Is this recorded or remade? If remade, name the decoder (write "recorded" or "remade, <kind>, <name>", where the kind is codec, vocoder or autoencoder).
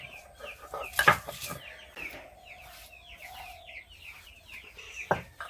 recorded